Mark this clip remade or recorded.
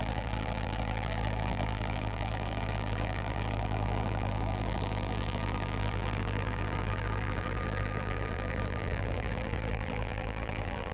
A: remade